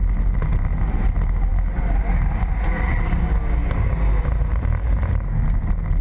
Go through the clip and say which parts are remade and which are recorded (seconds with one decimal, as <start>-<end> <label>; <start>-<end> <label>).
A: 0.0-6.0 recorded

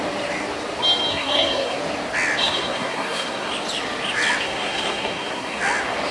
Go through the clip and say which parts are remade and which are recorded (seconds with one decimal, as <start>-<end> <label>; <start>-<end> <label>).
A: 0.0-1.1 recorded; 1.1-1.8 remade; 1.8-2.4 recorded; 2.4-3.5 remade; 3.5-4.4 recorded; 4.4-5.6 remade; 5.6-6.1 recorded